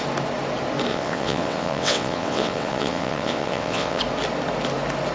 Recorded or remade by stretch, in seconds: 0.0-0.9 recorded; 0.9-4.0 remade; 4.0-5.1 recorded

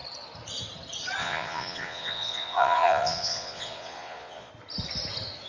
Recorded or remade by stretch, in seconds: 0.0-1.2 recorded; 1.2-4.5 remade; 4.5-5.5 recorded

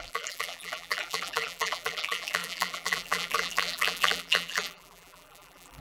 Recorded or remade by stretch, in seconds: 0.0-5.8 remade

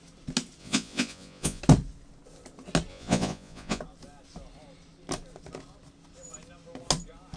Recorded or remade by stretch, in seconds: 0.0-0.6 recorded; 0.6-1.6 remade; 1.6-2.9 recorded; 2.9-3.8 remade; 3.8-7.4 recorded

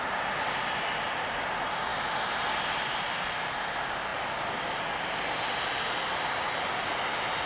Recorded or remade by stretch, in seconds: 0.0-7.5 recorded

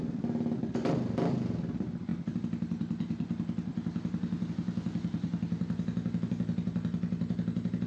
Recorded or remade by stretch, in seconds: 0.0-7.9 recorded

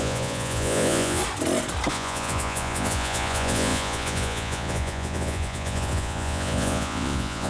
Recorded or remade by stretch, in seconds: 0.0-1.2 remade; 1.2-1.9 recorded; 1.9-7.5 remade

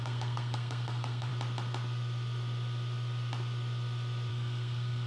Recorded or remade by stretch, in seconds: 0.0-1.3 remade; 1.3-4.3 recorded; 4.3-5.1 remade